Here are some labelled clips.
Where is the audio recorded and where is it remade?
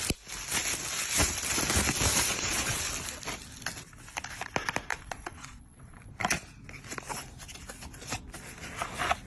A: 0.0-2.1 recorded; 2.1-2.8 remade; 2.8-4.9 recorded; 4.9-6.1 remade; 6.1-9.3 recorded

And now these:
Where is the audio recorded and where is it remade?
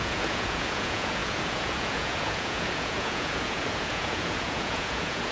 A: 0.0-5.3 remade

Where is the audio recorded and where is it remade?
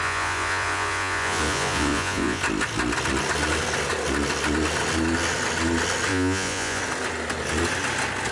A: 0.0-2.4 remade; 2.4-6.1 recorded; 6.1-6.8 remade; 6.8-8.3 recorded